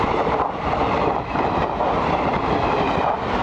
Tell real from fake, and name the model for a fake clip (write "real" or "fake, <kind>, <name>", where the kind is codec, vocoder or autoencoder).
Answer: fake, vocoder, BigVGAN v2